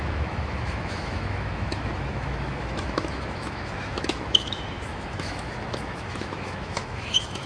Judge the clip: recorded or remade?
remade